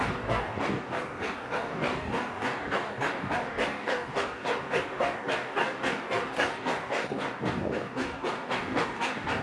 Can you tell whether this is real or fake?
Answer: fake